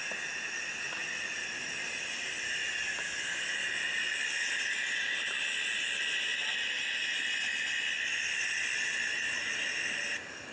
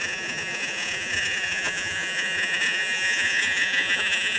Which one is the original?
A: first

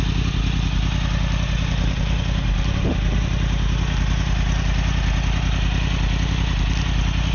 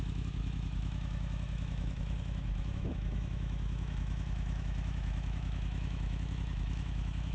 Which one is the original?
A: first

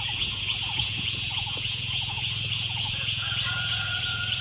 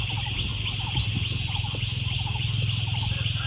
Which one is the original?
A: second